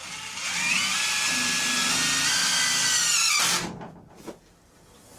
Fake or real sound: real